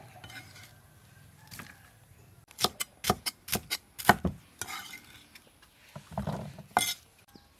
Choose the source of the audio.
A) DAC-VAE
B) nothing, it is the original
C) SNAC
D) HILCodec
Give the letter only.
B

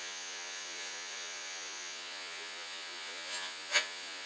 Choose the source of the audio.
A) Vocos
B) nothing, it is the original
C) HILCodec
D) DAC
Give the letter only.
A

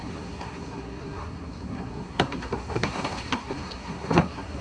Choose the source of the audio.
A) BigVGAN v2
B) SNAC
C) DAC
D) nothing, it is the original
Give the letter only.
B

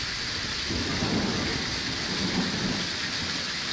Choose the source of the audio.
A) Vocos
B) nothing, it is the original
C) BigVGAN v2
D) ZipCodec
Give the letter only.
B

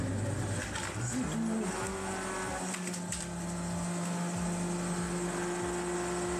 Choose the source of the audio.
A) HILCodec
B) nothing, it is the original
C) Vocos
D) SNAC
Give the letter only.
B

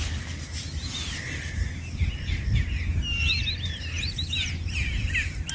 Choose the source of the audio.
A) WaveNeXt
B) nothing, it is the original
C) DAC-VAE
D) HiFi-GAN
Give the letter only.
B